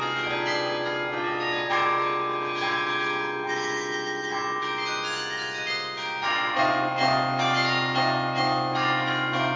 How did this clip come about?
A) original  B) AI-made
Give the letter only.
A